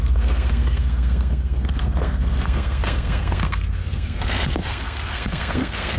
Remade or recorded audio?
remade